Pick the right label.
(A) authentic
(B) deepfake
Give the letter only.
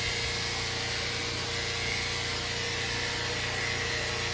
A